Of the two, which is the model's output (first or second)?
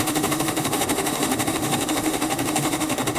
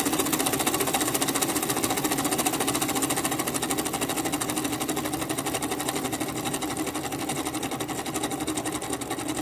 first